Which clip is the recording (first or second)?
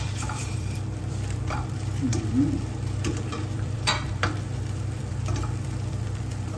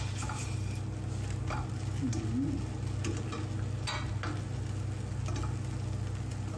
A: second